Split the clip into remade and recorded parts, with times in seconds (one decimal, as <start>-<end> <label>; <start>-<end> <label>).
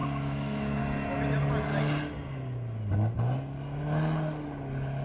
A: 0.0-0.8 remade; 0.8-5.0 recorded